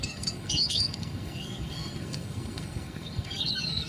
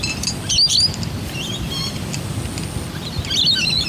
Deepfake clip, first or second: first